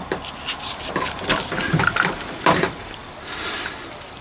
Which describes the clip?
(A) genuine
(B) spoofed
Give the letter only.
A